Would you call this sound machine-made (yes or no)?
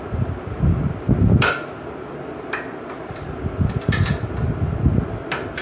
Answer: no